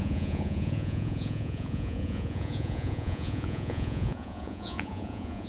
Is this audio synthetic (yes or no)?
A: yes